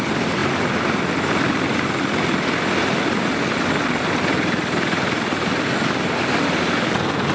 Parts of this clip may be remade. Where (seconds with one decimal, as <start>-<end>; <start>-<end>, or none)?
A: none